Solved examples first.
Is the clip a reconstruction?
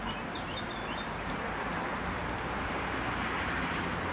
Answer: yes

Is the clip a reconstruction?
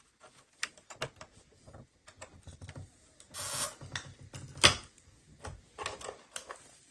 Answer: no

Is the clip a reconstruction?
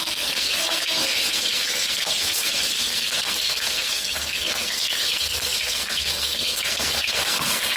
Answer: yes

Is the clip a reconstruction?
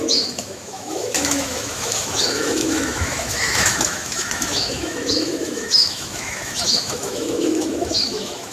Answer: yes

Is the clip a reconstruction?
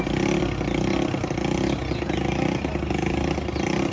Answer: no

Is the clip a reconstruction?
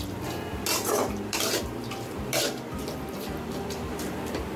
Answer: yes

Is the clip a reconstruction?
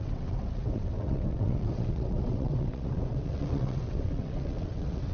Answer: yes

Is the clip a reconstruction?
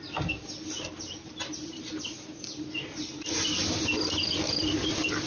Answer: no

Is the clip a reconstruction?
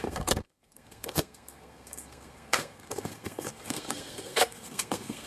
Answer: yes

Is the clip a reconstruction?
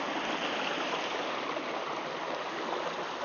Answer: no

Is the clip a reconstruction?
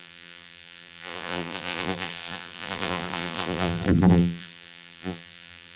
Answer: yes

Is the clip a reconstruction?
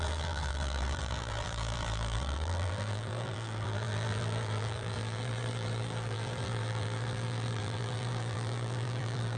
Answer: yes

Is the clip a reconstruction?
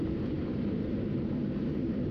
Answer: yes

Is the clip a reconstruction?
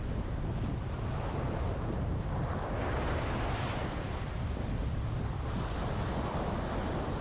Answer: no